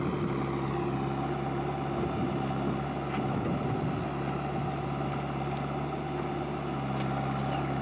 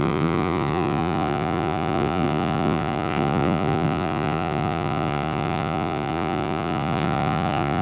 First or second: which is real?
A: first